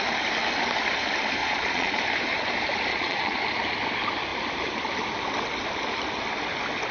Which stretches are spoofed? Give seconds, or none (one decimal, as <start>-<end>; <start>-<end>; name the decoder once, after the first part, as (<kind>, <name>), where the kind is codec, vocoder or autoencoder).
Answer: 1.4-2.0 (vocoder, Vocos); 2.9-3.4